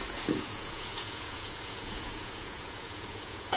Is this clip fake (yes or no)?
yes